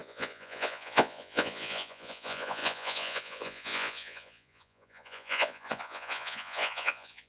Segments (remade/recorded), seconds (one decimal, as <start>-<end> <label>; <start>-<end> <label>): 0.0-7.3 remade